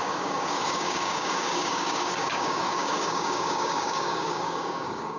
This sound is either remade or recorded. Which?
remade